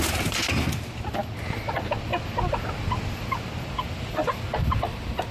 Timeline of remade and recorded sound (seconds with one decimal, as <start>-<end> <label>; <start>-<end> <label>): 0.0-5.3 recorded

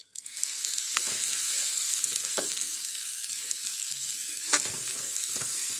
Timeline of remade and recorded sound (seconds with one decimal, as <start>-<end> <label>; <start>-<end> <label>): 0.0-5.8 remade

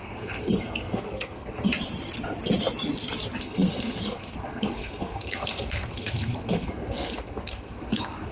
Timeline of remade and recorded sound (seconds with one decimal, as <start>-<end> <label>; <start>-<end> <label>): 0.0-1.7 remade; 1.7-3.4 recorded; 3.4-8.3 remade

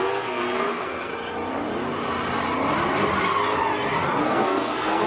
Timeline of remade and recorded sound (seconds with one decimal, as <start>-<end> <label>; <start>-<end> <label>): 0.0-1.1 remade; 1.1-4.2 recorded; 4.2-5.1 remade

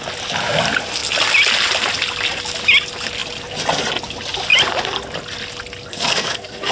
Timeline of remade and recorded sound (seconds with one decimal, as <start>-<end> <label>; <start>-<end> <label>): 0.0-5.9 recorded; 5.9-6.7 remade

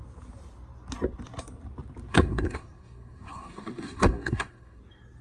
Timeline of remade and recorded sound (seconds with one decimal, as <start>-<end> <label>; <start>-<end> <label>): 0.0-2.1 recorded; 2.1-4.8 remade; 4.8-5.2 recorded

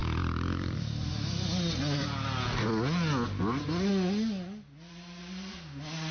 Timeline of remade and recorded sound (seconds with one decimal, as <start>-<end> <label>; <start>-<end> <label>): 0.0-6.1 recorded